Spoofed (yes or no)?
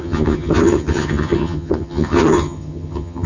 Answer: yes